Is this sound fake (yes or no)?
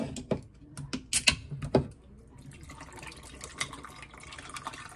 no